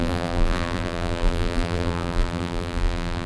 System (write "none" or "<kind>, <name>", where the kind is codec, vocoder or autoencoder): vocoder, BigVGAN v2